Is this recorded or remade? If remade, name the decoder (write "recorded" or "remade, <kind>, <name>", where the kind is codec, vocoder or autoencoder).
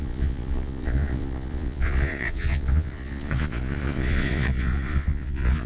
remade, vocoder, Vocos